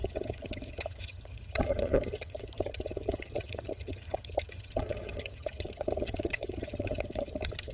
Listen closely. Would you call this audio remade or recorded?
remade